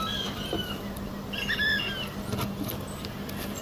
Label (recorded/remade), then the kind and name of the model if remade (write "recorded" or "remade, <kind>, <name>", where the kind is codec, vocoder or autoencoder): recorded